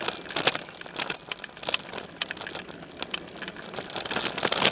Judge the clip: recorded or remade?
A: recorded